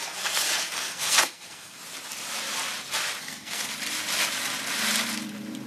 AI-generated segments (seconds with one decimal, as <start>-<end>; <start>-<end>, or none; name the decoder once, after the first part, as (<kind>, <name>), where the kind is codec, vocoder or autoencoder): 0.0-1.8 (codec, SNAC); 3.2-3.7